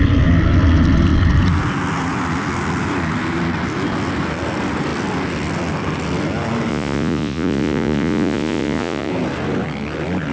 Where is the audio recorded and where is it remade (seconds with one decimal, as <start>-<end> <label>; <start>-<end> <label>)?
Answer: 0.0-6.7 recorded; 6.7-9.1 remade; 9.1-10.3 recorded